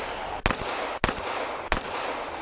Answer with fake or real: real